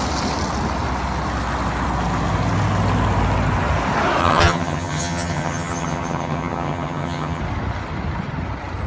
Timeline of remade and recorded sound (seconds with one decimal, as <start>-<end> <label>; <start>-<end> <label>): 0.0-4.2 recorded; 4.2-7.4 remade; 7.4-8.9 recorded

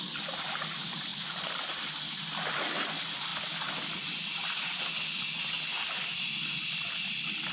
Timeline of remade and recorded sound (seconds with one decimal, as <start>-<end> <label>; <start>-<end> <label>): 0.0-7.5 recorded

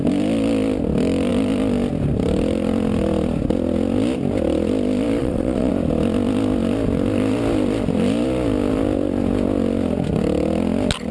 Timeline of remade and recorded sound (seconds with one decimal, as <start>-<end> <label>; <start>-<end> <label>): 0.0-5.2 recorded; 5.2-5.7 remade; 5.7-11.1 recorded

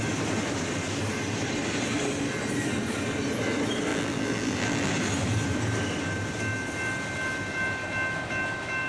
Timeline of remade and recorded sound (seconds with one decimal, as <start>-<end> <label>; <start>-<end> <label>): 0.0-3.9 recorded; 3.9-4.9 remade; 4.9-8.9 recorded